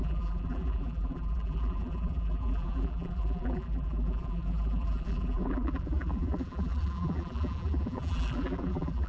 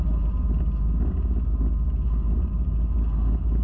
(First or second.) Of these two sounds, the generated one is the first